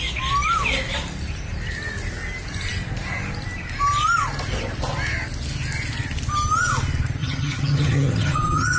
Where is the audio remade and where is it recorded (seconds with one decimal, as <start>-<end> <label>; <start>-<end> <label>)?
0.0-7.2 recorded; 7.2-8.8 remade